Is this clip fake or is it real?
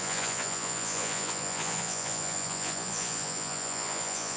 fake